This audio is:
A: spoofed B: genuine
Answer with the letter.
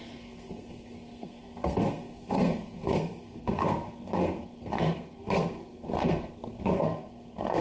A